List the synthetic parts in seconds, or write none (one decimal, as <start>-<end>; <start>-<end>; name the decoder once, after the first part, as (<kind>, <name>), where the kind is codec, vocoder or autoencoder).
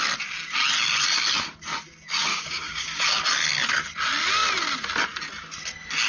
2.3-3.0 (codec, DAC)